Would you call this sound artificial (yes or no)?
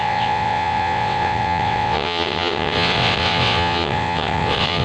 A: yes